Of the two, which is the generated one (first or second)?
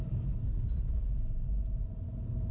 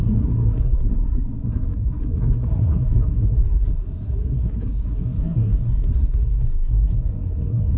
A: second